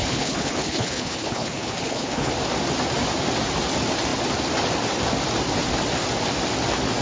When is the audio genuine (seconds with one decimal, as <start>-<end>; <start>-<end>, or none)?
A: 2.3-7.0